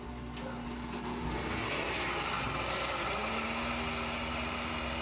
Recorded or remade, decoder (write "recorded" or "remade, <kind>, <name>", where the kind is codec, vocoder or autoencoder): recorded